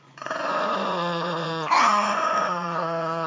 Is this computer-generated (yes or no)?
yes